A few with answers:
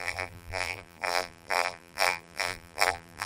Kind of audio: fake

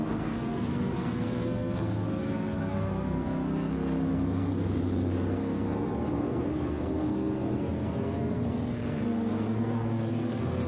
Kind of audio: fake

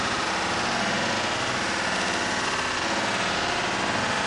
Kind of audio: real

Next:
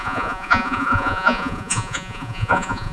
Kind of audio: fake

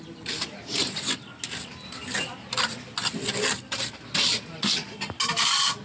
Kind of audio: real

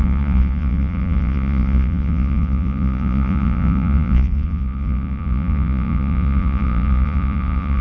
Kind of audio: fake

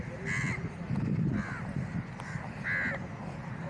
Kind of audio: real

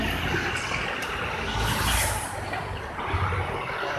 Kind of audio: real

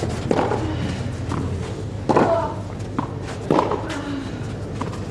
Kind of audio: real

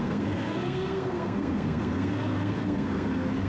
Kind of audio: fake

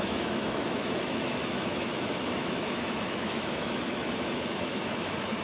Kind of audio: fake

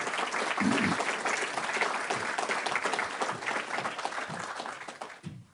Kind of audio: real